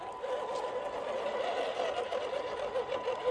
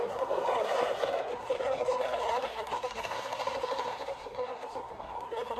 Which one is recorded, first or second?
first